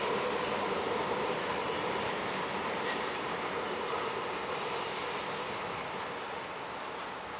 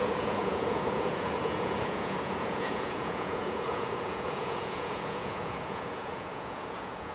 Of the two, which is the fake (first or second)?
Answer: second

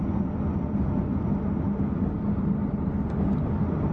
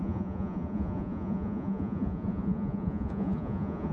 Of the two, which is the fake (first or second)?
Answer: second